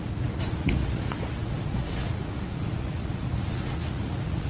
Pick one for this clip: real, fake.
fake